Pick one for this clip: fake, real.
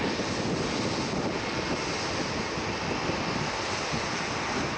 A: real